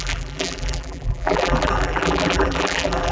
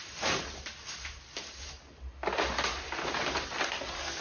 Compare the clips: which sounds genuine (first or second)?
second